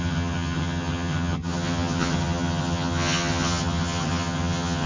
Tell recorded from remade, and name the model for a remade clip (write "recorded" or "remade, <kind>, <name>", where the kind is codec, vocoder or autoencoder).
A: remade, vocoder, HiFi-GAN